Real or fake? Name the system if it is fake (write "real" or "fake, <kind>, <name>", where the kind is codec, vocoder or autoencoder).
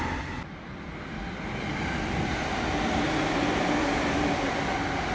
real